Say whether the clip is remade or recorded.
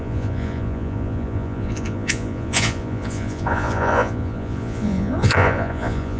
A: remade